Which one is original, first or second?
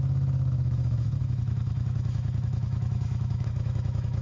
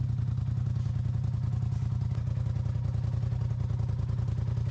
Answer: second